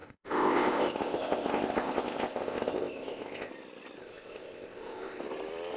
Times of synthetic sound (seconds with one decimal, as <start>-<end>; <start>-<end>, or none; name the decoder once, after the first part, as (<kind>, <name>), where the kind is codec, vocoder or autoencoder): 0.0-3.5 (codec, ZipCodec); 4.0-5.2